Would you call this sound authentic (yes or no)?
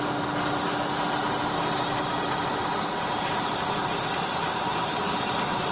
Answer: yes